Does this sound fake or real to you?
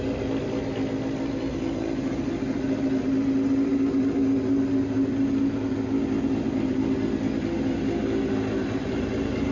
real